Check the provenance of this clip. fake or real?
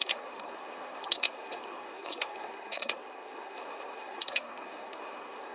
fake